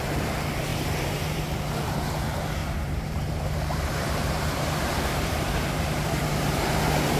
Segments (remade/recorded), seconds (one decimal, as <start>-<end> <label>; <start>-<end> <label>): 0.0-0.7 recorded; 0.7-1.4 remade; 1.4-2.6 recorded; 2.6-7.2 remade